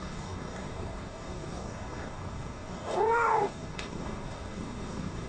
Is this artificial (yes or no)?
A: yes